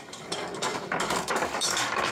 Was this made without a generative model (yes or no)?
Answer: no